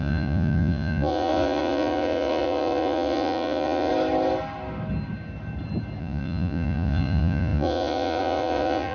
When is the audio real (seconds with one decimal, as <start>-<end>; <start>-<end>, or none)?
3.9-6.0